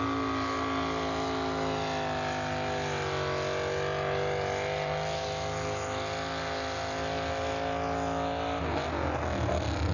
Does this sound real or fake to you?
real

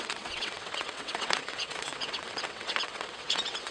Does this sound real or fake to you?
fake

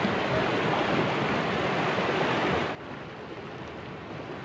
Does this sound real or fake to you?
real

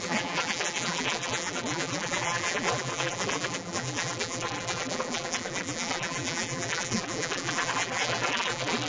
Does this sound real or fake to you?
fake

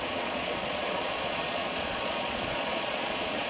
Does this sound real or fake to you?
fake